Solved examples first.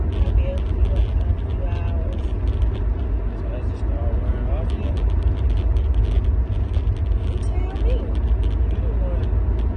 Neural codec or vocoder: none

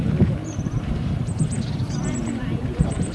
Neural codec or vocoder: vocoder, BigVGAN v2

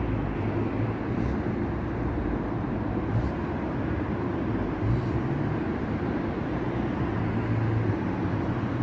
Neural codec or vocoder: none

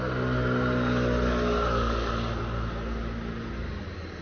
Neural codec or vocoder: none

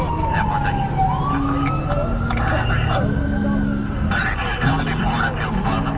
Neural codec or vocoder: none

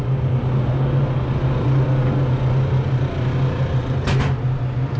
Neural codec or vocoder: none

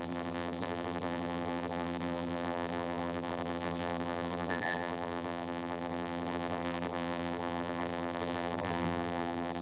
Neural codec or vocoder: vocoder, BigVGAN v2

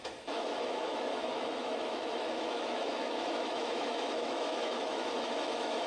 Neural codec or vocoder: autoencoder, DAC-VAE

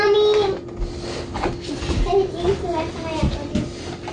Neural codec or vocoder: none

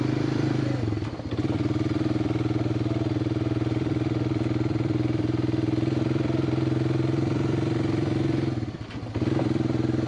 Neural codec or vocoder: vocoder, BigVGAN v2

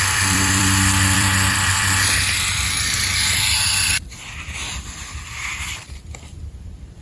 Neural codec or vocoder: vocoder, BigVGAN v2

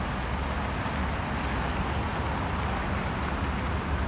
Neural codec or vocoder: none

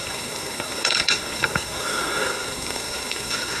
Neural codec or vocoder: codec, SNAC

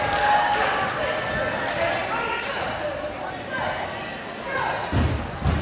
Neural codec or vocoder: none